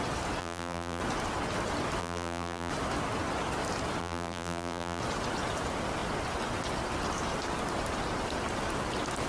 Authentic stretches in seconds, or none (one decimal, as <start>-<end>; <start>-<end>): 0.0-0.4; 1.0-2.0; 2.7-4.0; 5.0-9.3